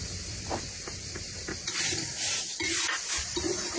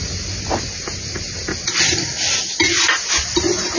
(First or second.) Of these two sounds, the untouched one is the second